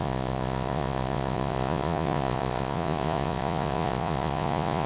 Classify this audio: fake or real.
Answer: fake